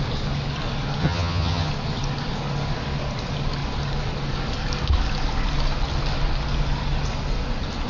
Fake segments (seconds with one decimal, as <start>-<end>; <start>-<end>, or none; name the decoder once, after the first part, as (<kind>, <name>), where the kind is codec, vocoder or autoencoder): 1.0-1.7 (vocoder, HiFi-GAN)